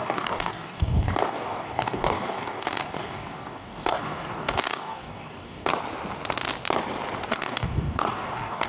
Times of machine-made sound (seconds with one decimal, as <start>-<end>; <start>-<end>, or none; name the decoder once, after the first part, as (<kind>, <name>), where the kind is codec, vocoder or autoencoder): 0.0-5.7 (codec, DAC); 7.3-8.7